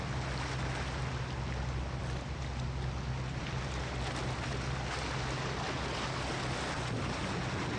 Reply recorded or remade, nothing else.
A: recorded